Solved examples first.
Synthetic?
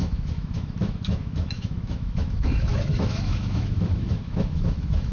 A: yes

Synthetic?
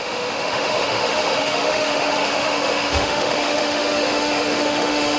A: yes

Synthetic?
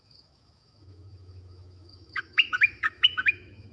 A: yes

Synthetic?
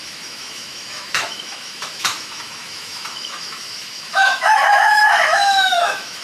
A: yes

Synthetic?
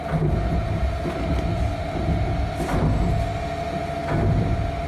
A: no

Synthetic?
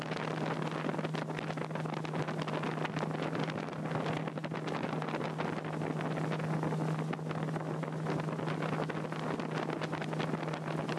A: no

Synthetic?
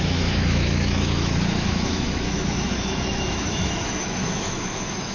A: yes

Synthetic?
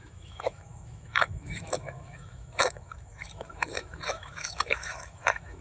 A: yes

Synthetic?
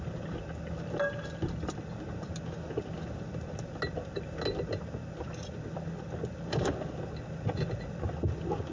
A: no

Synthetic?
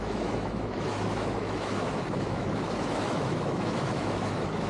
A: yes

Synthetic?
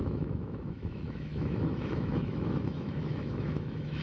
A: yes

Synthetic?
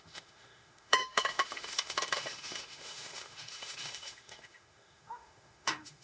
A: yes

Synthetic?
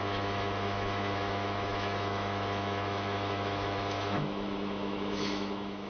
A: yes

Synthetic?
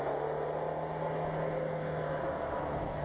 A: no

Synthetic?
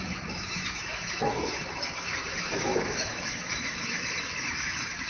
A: yes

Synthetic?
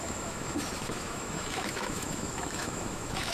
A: yes